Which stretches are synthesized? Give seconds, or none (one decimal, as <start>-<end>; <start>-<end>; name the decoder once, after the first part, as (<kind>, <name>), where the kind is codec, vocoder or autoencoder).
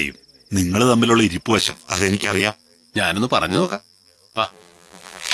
1.6-2.9 (vocoder, BigVGAN v2); 3.5-5.3